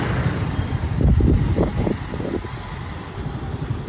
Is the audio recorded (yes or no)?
yes